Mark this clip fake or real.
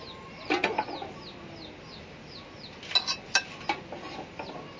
real